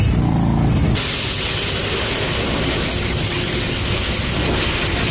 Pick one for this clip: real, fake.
real